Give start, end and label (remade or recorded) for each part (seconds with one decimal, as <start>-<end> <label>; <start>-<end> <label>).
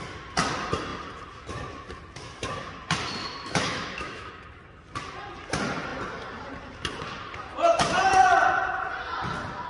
0.0-3.2 recorded; 3.2-4.3 remade; 4.3-9.7 recorded